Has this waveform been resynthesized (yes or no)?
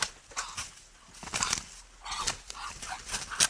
no